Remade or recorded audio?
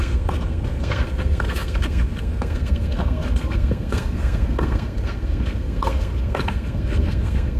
remade